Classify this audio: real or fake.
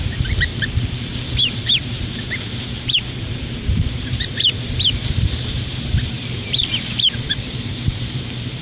fake